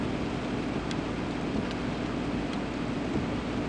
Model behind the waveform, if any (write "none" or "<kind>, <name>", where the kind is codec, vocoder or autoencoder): none